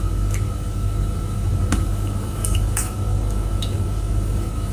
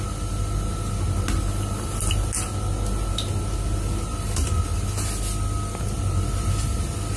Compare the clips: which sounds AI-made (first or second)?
first